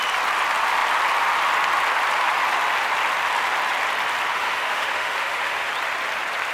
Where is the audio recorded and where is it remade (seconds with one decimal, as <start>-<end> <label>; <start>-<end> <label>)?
0.0-4.3 recorded; 4.3-5.7 remade; 5.7-6.5 recorded